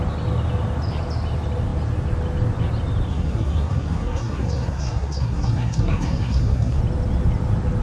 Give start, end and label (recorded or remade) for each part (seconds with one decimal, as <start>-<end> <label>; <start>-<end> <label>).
0.0-3.1 recorded; 3.1-6.8 remade; 6.8-7.8 recorded